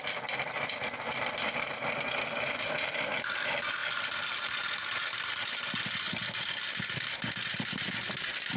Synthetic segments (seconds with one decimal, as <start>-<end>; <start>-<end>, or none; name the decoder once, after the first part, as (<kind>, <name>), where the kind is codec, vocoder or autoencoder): none

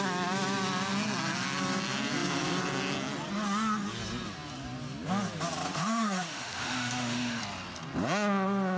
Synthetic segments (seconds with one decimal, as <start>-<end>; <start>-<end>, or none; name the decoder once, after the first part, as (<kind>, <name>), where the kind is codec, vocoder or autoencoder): 5.7-7.4 (autoencoder, DAC-VAE)

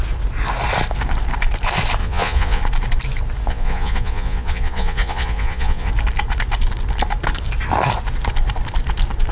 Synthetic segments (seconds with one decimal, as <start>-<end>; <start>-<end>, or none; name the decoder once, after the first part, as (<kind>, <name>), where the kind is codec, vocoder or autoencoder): 2.0-2.6 (vocoder, Vocos); 3.5-5.9

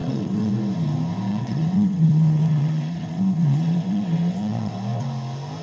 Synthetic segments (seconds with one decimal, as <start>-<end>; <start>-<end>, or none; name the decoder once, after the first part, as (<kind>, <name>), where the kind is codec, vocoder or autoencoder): 0.0-0.5 (vocoder, WaveNeXt); 1.3-4.7

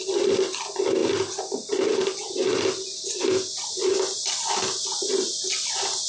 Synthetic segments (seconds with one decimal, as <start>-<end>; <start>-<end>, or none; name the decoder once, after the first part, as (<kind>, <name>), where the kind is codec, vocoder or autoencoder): none

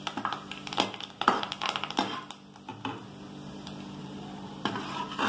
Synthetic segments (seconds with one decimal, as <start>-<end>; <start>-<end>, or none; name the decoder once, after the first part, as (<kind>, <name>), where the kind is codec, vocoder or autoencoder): 4.0-4.8 (vocoder, BigVGAN v2)

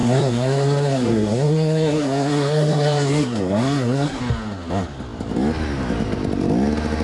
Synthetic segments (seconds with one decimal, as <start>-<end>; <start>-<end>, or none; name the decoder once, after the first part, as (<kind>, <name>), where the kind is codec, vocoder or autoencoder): 0.0-4.2 (codec, SNAC)